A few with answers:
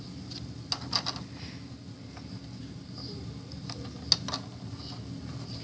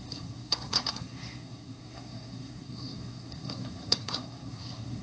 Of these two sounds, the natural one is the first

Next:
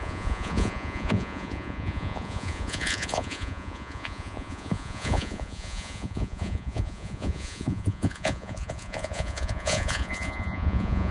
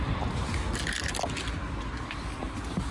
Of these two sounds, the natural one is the second